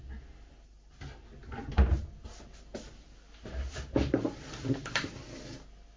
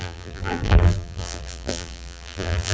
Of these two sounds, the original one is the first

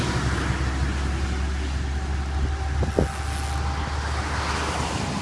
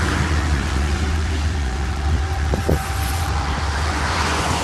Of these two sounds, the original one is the first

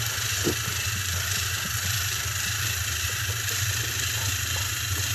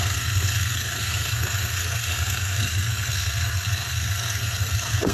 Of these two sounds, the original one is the first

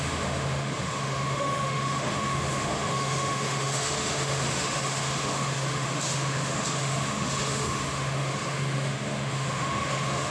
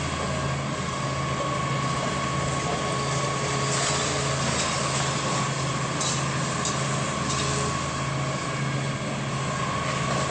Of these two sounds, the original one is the second